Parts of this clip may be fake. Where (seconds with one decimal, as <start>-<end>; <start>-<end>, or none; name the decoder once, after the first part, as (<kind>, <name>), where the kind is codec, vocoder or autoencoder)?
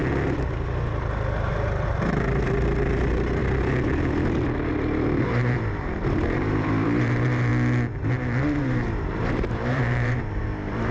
1.9-3.4 (vocoder, BigVGAN v2); 5.2-7.5; 8.6-10.9